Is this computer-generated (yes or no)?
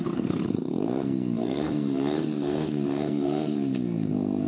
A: yes